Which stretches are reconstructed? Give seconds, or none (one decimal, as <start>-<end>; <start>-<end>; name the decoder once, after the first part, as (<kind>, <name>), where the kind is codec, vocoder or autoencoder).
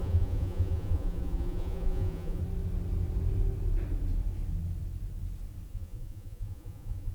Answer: 0.0-2.4 (vocoder, Vocos); 5.7-7.1